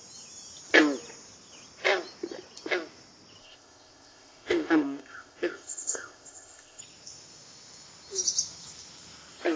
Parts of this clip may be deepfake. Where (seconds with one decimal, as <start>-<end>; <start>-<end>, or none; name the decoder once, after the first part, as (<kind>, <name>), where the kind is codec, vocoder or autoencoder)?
3.4-6.8 (codec, ZipCodec)